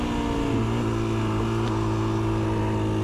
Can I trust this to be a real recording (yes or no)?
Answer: yes